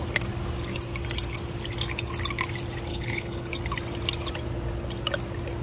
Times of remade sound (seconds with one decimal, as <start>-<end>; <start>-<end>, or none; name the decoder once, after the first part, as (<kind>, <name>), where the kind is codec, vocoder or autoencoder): 2.9-3.5 (codec, HILCodec)